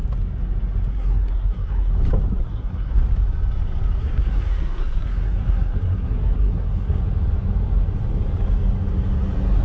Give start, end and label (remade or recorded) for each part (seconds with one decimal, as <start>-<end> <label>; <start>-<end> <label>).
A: 0.0-0.9 recorded; 0.9-1.9 remade; 1.9-2.4 recorded; 2.4-3.0 remade; 3.0-4.0 recorded; 4.0-7.0 remade; 7.0-9.6 recorded